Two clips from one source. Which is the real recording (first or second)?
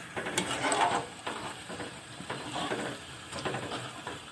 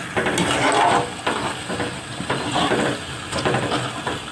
second